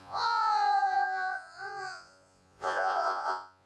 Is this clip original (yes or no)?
no